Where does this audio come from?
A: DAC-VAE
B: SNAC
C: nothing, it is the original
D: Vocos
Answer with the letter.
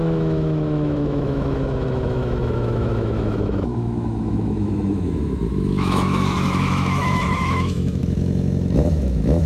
A